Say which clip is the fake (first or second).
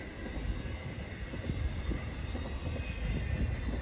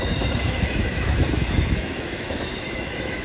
second